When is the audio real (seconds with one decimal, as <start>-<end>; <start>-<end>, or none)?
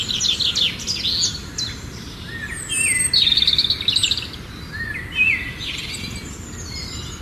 0.0-7.2